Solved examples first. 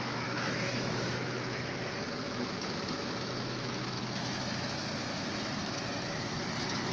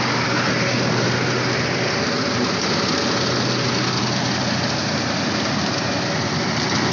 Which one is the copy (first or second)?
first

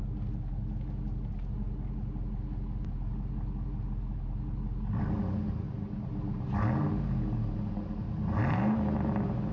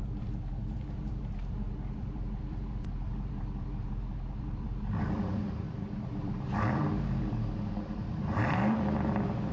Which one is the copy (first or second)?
second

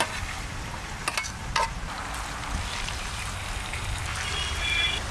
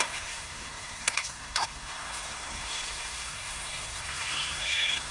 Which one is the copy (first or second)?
second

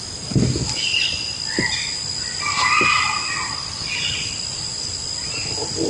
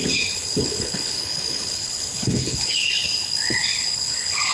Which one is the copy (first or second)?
second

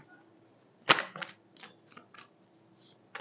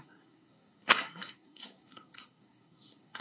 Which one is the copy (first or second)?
second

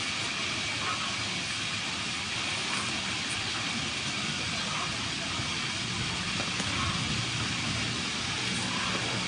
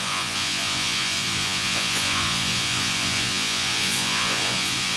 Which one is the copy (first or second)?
second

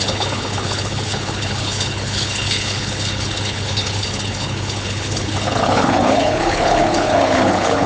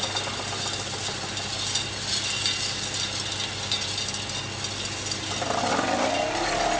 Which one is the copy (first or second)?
first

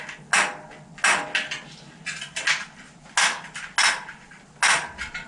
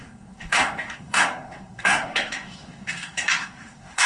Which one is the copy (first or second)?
second